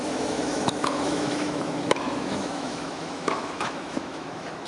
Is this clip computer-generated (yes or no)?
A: yes